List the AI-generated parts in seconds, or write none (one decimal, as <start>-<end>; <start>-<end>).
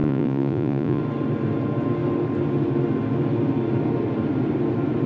0.0-1.0